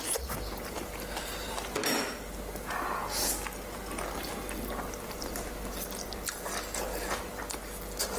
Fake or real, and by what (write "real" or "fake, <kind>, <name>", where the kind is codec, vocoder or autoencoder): real